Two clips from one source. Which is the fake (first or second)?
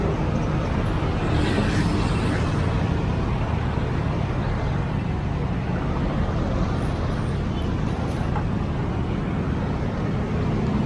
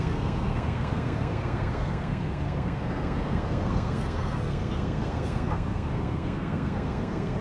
second